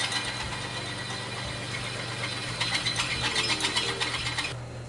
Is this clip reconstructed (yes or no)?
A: no